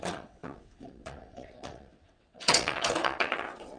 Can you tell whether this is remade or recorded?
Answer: remade